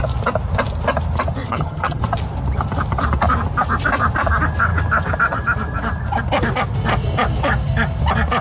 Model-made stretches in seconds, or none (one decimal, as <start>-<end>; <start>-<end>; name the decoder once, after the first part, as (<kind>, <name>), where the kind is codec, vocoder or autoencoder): 1.4-2.0 (vocoder, HiFi-GAN)